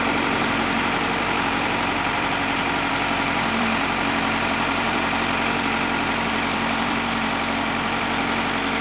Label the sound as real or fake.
fake